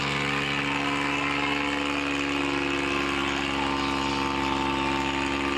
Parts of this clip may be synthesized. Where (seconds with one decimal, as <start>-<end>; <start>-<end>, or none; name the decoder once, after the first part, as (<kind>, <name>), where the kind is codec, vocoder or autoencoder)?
none